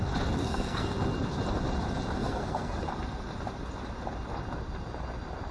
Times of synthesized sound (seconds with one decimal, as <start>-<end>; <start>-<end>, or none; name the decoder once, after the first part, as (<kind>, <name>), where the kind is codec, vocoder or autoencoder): 0.4-0.9 (codec, SNAC); 2.2-2.8